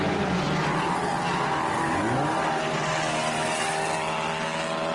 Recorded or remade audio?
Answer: recorded